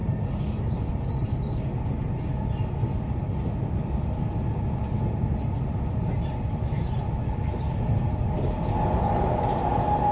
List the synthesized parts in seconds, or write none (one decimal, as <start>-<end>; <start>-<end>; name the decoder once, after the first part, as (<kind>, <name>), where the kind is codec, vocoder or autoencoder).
none